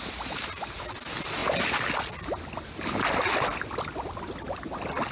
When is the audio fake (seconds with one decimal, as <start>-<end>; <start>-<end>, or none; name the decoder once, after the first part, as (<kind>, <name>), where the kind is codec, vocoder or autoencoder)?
none